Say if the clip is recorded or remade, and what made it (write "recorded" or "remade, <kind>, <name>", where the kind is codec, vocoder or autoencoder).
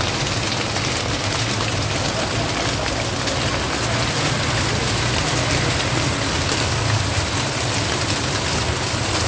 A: recorded